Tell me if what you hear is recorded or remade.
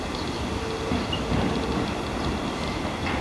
recorded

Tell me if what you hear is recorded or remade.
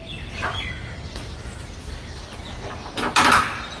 recorded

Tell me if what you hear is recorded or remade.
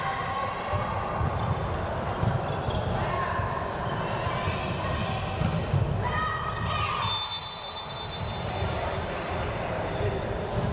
recorded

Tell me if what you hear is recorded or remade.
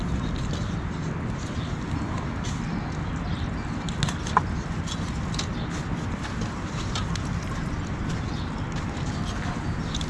recorded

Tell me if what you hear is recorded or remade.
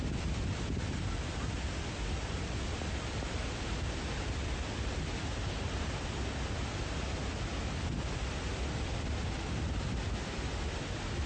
recorded